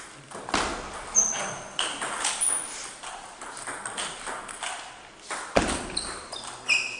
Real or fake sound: real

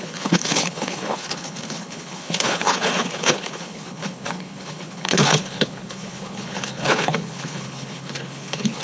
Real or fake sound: fake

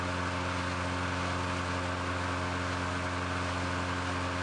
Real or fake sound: real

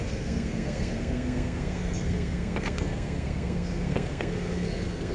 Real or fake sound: fake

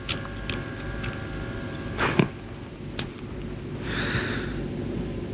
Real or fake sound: real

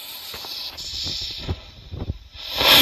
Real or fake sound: real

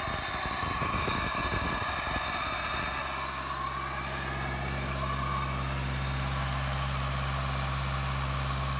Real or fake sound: real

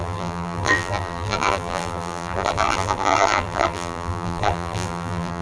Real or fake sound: fake